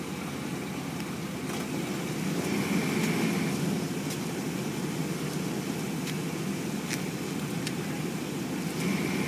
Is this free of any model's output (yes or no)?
yes